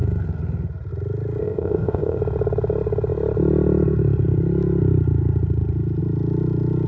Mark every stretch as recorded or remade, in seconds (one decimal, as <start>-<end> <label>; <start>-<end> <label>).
0.0-1.4 recorded; 1.4-2.2 remade; 2.2-6.9 recorded